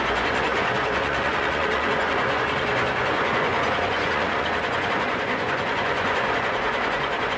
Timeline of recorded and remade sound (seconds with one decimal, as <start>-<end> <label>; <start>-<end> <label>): 0.0-7.4 remade